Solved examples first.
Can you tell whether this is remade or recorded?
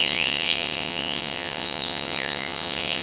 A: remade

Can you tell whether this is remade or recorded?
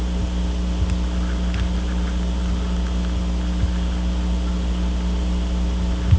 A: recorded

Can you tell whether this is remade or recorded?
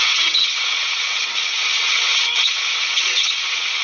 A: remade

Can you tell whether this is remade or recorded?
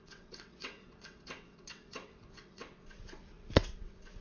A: remade